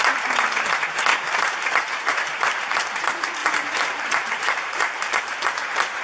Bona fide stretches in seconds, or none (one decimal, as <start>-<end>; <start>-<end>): 0.0-1.1; 2.9-3.4; 5.2-6.0